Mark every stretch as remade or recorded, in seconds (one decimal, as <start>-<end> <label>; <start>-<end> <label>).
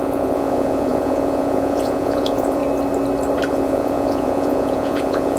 0.0-2.6 remade; 2.6-3.5 recorded; 3.5-5.4 remade